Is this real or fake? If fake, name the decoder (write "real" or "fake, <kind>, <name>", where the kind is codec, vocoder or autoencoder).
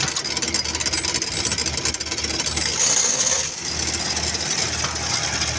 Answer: real